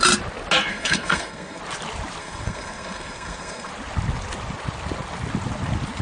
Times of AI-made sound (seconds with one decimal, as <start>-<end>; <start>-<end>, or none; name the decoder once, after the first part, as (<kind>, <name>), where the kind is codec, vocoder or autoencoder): 0.7-1.6 (codec, SNAC); 2.2-3.7